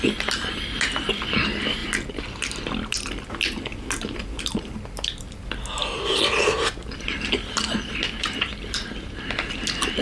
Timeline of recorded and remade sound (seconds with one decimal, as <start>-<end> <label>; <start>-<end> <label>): 0.0-10.0 recorded